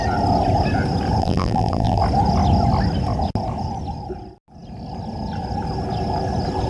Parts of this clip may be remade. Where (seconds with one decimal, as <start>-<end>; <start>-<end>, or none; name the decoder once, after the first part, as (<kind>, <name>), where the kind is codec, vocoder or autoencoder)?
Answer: 1.2-2.0 (vocoder, BigVGAN v2)